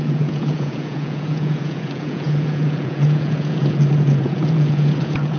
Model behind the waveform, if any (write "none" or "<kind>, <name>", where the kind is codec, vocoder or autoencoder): vocoder, Vocos